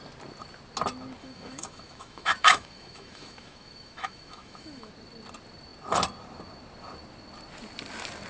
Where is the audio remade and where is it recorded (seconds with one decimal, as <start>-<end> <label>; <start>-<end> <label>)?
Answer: 0.0-1.2 recorded; 1.2-4.9 remade; 4.9-8.3 recorded